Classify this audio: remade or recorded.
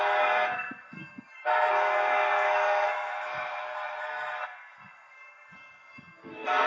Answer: remade